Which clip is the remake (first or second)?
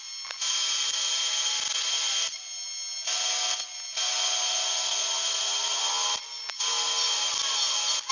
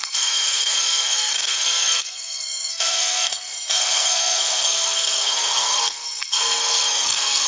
second